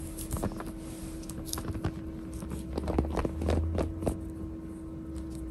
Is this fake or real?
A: real